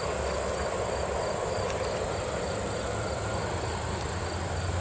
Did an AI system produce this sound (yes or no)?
no